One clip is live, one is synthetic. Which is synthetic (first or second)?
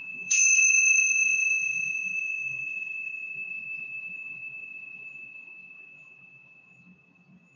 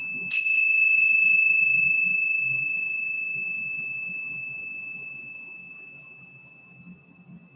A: first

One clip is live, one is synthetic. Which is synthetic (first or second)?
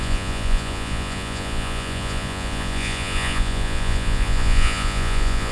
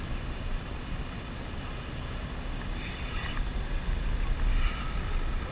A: first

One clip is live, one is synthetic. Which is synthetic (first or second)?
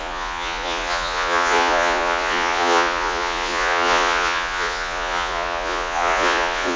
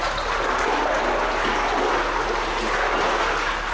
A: first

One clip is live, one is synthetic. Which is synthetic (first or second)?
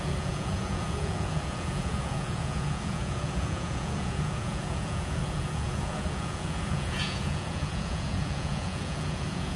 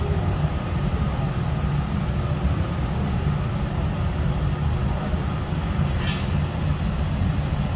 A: first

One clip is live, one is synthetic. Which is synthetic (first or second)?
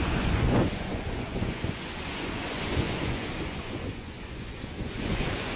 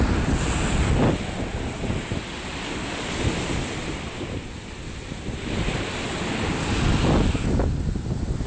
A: first